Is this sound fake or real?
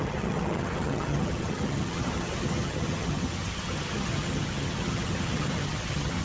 fake